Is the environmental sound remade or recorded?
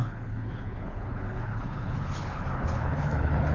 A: remade